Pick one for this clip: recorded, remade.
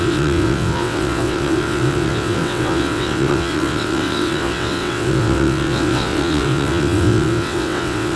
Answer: remade